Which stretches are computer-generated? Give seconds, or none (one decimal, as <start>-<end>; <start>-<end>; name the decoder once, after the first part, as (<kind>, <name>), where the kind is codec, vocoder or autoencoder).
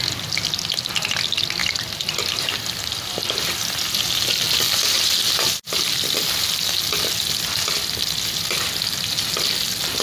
none